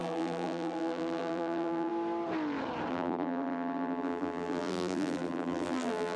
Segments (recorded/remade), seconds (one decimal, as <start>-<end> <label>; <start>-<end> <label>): 0.0-1.9 remade; 1.9-2.9 recorded; 2.9-6.2 remade